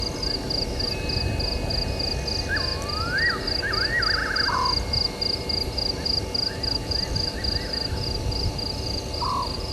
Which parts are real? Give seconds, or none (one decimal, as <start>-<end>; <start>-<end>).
0.0-9.7